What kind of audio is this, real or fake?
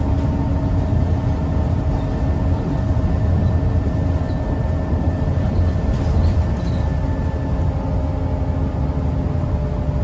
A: real